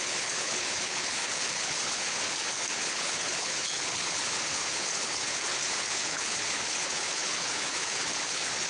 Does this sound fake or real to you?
fake